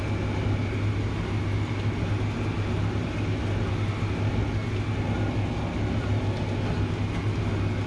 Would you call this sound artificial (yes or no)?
no